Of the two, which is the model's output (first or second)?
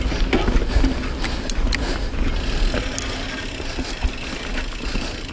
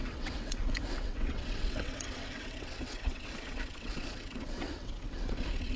second